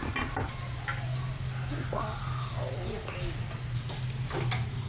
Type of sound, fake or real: real